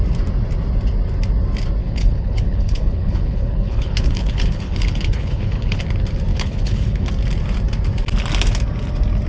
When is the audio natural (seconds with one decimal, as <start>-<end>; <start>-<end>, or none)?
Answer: 0.0-1.8; 5.8-6.3; 7.1-9.3